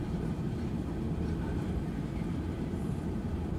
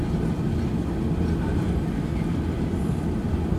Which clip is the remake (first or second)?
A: first